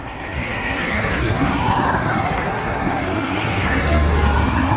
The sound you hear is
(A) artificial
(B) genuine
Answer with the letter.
A